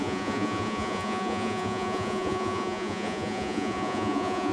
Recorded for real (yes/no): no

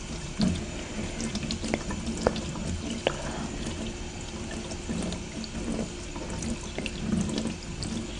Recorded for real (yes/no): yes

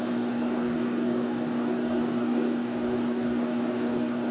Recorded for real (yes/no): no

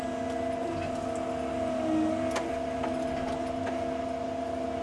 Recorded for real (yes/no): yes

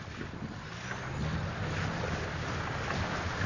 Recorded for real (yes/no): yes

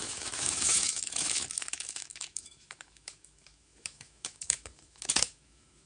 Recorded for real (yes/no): no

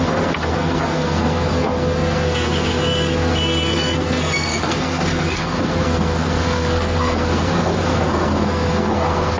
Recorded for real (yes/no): no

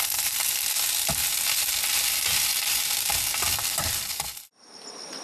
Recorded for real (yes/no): yes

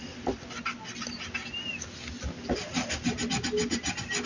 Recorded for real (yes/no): yes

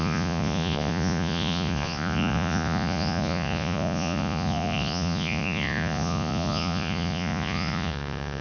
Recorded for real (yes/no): no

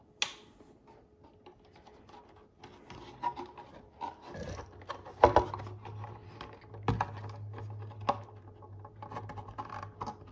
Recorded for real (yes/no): yes